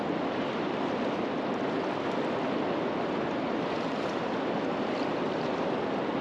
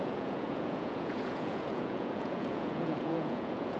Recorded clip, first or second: first